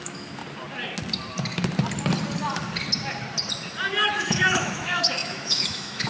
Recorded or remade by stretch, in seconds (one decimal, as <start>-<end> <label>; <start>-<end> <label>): 0.0-0.4 remade; 0.4-4.1 recorded; 4.1-6.1 remade